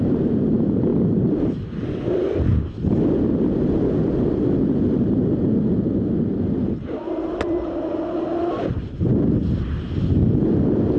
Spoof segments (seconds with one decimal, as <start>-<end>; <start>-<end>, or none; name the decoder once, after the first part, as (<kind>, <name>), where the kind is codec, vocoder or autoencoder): 0.9-2.0 (vocoder, BigVGAN v2)